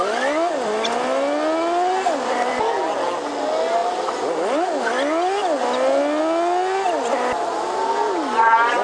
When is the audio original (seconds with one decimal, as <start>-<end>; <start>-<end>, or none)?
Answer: 0.0-8.8